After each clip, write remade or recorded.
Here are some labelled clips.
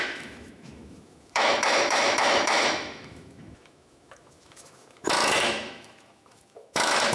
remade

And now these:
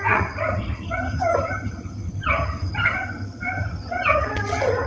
remade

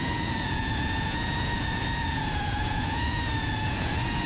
remade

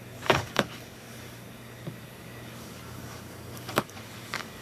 remade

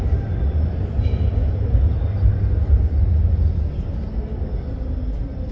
recorded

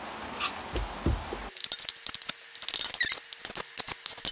recorded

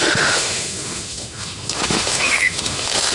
remade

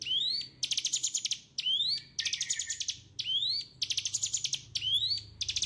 recorded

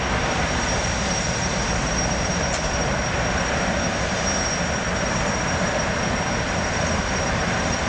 remade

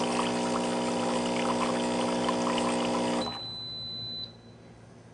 recorded